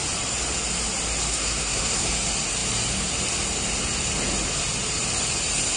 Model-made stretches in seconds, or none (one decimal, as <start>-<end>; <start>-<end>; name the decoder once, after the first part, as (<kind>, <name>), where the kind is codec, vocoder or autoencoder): 1.3-2.1 (codec, SNAC)